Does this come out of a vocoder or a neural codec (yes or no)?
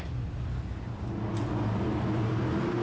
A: no